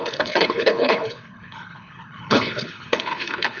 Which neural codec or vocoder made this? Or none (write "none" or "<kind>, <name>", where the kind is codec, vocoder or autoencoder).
codec, HILCodec